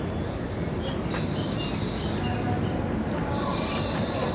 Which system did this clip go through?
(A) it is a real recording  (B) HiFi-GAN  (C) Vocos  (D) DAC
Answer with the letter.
A